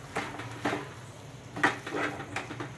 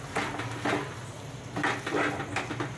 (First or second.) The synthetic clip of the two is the first